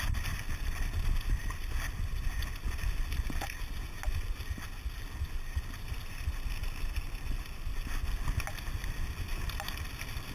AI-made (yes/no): no